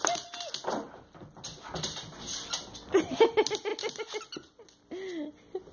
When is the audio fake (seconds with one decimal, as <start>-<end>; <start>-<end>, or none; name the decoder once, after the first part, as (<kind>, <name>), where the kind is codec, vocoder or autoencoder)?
none